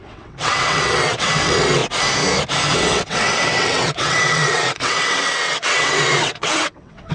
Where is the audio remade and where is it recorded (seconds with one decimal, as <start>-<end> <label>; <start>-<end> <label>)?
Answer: 0.0-1.8 remade; 1.8-2.7 recorded; 2.7-7.1 remade